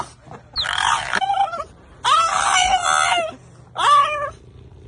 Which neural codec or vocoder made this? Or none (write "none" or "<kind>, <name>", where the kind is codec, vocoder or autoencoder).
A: none